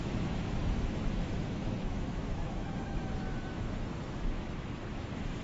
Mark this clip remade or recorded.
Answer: remade